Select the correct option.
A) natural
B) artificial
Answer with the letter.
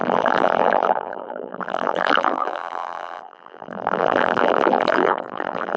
B